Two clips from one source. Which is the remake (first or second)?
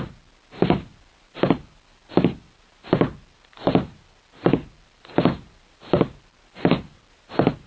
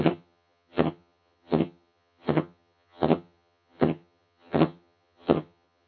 second